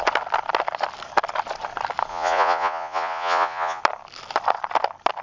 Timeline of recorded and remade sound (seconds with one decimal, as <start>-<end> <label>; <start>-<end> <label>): 0.0-2.1 recorded; 2.1-3.8 remade; 3.8-5.2 recorded